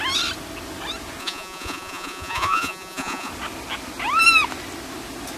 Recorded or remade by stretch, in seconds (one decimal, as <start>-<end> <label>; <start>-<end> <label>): 0.0-1.2 recorded; 1.2-3.3 remade; 3.3-5.4 recorded